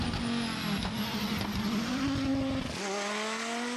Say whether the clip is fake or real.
real